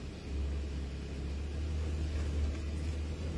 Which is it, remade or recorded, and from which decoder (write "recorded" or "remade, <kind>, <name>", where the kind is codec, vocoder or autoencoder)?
recorded